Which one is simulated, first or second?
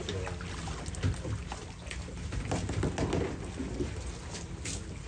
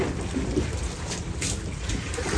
second